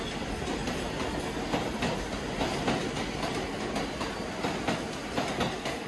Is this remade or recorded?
recorded